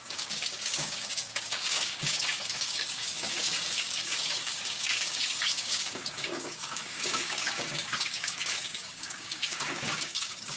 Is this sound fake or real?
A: fake